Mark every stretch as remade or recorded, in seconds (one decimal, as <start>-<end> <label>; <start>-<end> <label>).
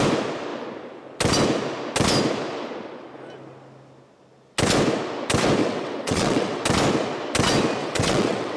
0.0-5.6 recorded; 5.6-6.6 remade; 6.6-7.8 recorded; 7.8-8.6 remade